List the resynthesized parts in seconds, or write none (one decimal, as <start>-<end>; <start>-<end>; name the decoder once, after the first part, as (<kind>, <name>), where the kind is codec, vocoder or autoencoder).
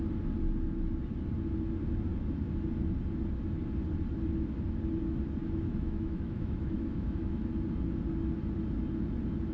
5.4-7.5 (autoencoder, DAC-VAE)